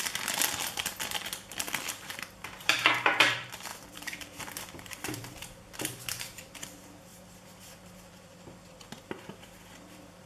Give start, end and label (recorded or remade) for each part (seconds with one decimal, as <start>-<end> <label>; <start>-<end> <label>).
0.0-1.5 recorded; 1.5-10.3 remade